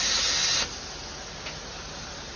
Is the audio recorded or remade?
recorded